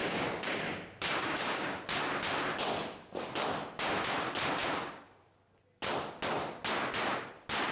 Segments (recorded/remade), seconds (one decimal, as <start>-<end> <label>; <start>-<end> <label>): 0.0-0.6 remade; 0.6-1.2 recorded; 1.2-1.8 remade; 1.8-7.7 recorded